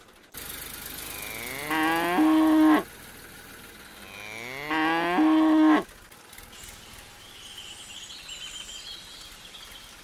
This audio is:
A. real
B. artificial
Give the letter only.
A